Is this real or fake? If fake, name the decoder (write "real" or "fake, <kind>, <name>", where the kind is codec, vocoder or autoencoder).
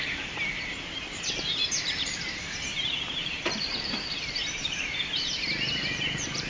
fake, vocoder, BigVGAN v2